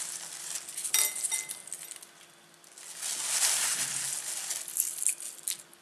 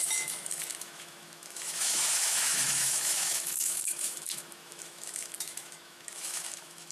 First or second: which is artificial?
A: second